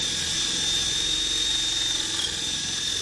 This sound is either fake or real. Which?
real